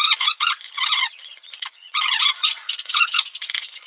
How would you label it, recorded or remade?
remade